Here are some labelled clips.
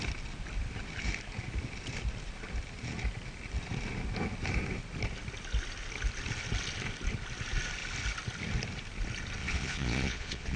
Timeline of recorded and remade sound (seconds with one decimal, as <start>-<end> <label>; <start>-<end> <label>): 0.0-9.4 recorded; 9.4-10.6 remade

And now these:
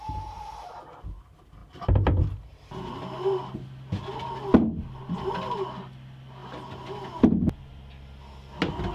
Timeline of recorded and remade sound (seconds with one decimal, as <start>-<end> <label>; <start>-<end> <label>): 0.0-8.9 recorded

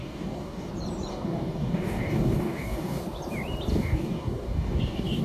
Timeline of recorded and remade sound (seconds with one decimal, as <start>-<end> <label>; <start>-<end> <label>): 0.0-0.7 remade; 0.7-1.1 recorded; 1.1-3.0 remade; 3.0-3.7 recorded; 3.7-5.2 remade